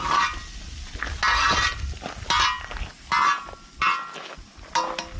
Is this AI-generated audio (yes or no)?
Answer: no